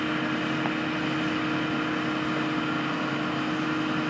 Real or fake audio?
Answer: real